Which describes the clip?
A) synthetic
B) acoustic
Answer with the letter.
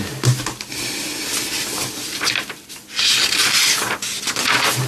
B